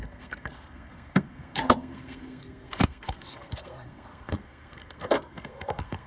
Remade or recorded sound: remade